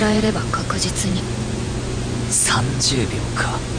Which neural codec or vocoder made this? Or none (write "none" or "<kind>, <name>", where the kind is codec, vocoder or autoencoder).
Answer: vocoder, Vocos